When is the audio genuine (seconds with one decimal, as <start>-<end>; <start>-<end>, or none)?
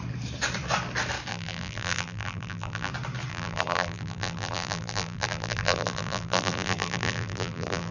0.0-1.3; 2.9-3.3